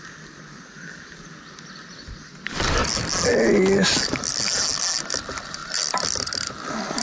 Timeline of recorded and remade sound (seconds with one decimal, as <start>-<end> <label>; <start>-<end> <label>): 0.0-7.0 recorded

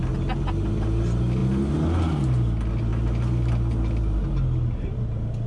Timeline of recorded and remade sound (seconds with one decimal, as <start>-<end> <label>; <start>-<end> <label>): 0.0-5.5 recorded

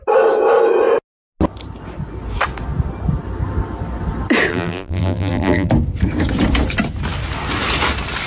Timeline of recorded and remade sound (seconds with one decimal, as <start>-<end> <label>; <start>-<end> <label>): 0.0-4.5 recorded; 4.5-5.7 remade; 5.7-8.3 recorded

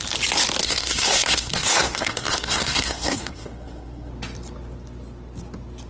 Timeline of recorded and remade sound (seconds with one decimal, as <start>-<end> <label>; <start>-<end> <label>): 0.0-0.6 recorded; 0.6-4.1 remade; 4.1-5.9 recorded

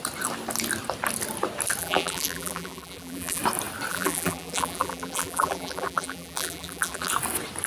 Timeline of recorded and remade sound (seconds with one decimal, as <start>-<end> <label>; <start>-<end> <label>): 0.0-1.8 recorded; 1.8-3.4 remade; 3.4-3.9 recorded; 3.9-7.1 remade; 7.1-7.7 recorded

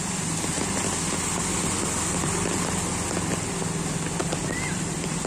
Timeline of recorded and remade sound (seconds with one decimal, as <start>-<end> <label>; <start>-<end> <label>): 0.0-5.3 recorded

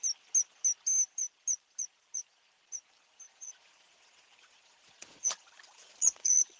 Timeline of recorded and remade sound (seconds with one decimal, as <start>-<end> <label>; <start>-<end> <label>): 0.0-3.3 recorded; 3.3-6.6 remade